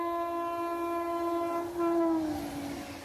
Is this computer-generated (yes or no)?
no